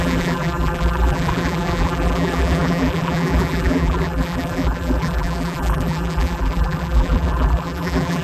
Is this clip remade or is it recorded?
remade